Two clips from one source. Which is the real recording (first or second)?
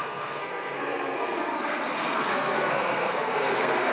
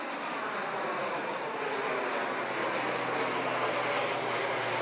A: second